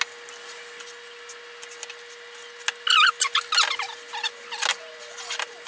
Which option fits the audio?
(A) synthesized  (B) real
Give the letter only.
B